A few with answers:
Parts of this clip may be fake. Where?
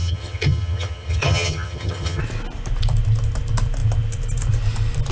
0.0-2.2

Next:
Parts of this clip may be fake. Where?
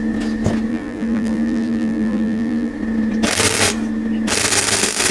0.7-2.7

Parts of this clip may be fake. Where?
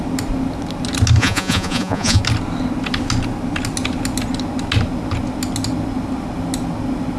1.2-2.2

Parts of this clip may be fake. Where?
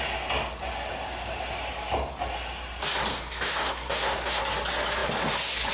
3.1-4.4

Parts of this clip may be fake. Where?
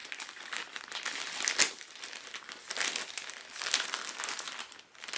none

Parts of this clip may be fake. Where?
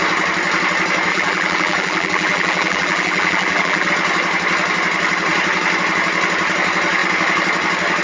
1.1-3.9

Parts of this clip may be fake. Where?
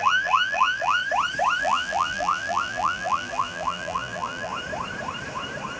0.0-1.0; 1.6-4.5